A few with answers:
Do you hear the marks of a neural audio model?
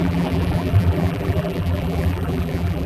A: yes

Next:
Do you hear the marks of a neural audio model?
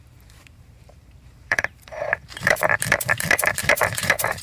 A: yes